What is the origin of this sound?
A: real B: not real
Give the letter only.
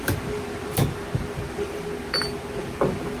A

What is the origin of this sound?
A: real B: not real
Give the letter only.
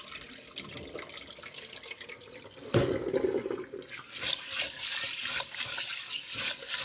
A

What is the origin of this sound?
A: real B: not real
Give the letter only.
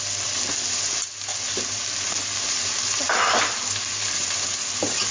A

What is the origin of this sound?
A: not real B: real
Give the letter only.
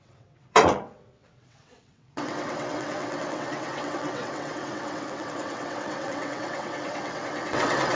A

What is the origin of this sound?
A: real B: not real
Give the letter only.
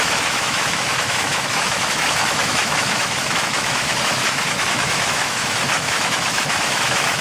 B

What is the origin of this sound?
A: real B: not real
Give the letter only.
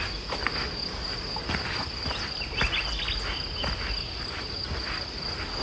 A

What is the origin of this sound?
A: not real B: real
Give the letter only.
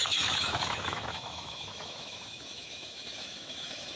A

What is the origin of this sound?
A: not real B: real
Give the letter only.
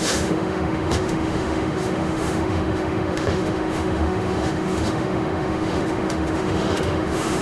A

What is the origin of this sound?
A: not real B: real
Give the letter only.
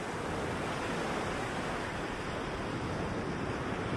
B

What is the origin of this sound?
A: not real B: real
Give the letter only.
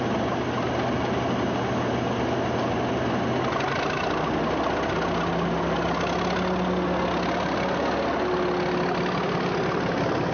B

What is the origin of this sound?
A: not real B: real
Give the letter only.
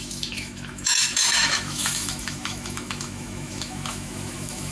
A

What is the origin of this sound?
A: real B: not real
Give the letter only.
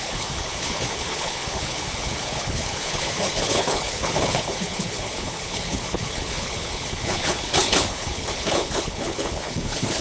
B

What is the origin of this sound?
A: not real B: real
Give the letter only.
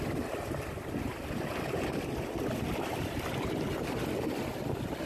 B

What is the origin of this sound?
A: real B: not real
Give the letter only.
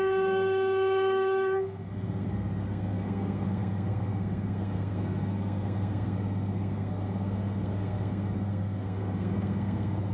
B